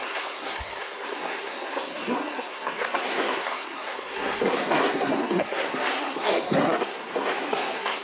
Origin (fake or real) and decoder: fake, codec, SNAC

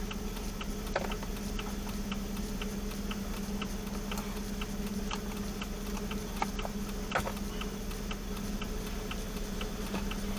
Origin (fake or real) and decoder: real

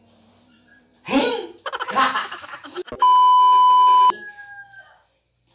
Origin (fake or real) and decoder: real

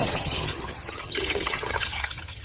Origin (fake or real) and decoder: fake, vocoder, HiFi-GAN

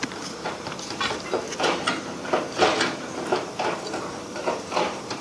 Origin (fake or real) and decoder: fake, vocoder, BigVGAN v2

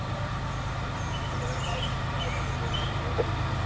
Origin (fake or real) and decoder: real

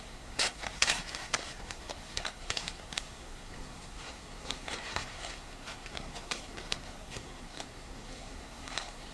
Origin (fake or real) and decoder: fake, codec, SNAC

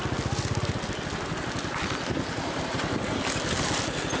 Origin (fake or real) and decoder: real